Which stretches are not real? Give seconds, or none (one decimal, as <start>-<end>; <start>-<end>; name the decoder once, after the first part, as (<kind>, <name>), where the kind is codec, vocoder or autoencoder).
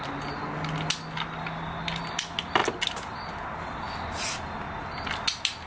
none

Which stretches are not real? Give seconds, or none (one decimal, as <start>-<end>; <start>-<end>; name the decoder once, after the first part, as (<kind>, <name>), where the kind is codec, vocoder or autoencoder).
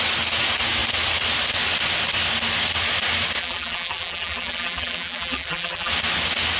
3.4-5.9 (vocoder, BigVGAN v2)